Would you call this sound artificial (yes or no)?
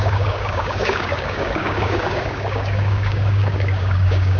yes